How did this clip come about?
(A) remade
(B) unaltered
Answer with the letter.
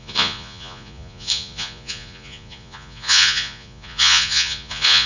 A